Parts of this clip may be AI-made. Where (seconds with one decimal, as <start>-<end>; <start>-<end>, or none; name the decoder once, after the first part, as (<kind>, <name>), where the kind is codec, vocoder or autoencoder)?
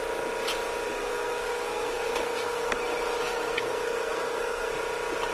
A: 1.0-2.7 (codec, SNAC); 3.2-4.7